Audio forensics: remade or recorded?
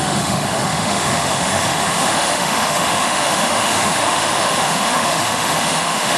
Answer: remade